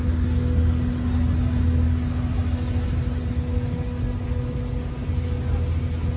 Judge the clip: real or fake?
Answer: real